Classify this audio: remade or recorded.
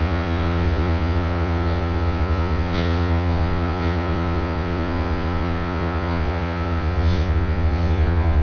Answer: remade